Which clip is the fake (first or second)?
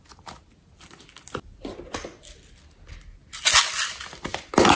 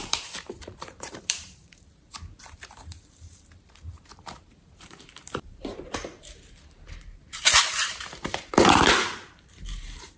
second